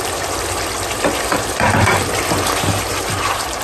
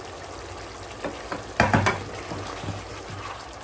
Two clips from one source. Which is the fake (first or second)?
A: first